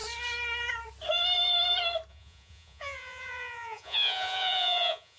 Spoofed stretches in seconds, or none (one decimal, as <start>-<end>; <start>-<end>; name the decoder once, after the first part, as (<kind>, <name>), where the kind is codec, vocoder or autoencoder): 2.1-5.2 (vocoder, Vocos)